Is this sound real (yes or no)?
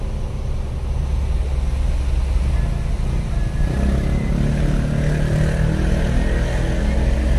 yes